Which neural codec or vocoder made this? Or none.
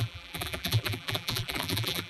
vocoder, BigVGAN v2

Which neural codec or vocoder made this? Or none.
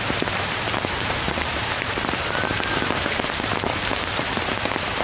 vocoder, BigVGAN v2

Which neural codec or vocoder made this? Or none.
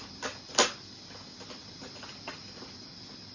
none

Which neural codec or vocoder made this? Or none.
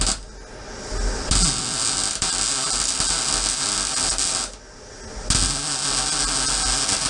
none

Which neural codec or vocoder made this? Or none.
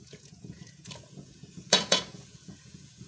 vocoder, Vocos